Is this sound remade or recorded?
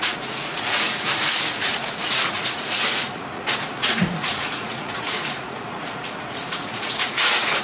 remade